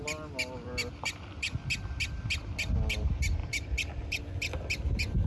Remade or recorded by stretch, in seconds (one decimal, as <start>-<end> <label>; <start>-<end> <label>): 0.0-0.6 recorded; 0.6-1.6 remade; 1.6-3.4 recorded; 3.4-4.2 remade; 4.2-5.3 recorded